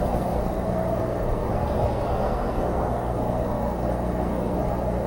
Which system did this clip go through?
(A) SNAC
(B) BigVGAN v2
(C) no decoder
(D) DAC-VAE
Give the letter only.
A